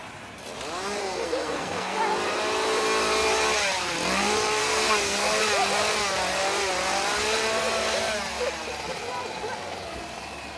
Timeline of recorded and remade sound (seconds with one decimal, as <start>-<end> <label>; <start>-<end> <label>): 0.0-1.0 recorded; 1.0-2.0 remade; 2.0-4.6 recorded; 4.6-5.4 remade; 5.4-10.6 recorded